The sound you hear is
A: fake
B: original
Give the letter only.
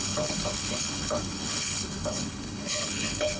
A